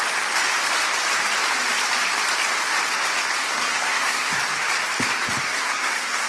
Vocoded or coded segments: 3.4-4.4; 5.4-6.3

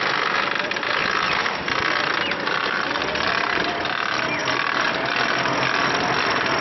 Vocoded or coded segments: none

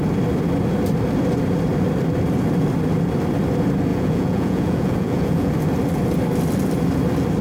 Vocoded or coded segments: 3.9-5.5

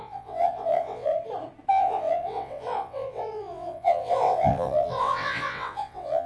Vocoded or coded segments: 0.0-1.1; 1.7-6.3

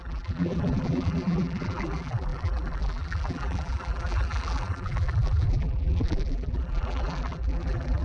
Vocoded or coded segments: 0.0-8.0

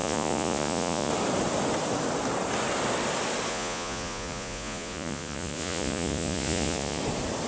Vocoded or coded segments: 0.0-1.1; 3.5-7.0

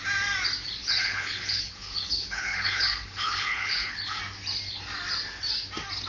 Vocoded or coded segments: 0.8-4.2

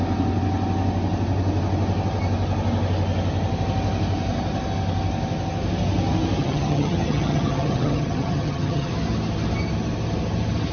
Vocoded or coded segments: 6.4-8.9